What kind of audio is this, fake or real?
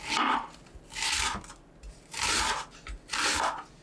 real